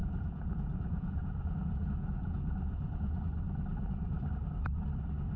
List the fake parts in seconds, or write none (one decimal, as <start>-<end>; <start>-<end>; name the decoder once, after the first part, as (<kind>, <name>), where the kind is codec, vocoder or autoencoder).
0.0-3.2 (vocoder, Vocos)